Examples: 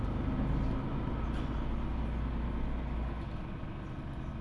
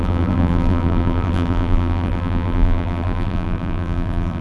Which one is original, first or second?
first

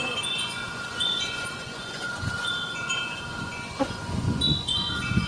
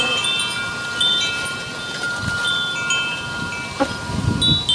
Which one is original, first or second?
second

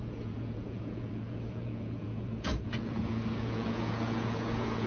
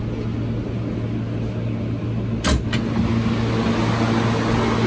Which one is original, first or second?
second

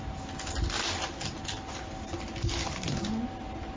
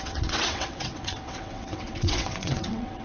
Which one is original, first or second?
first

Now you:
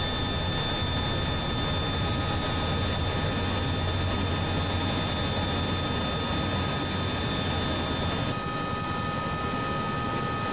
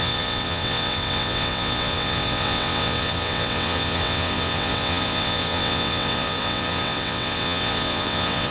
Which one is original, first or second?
first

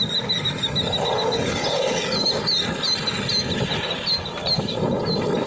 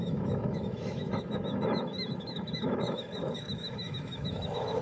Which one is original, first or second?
first